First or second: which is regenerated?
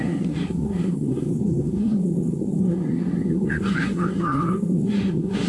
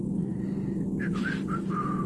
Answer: first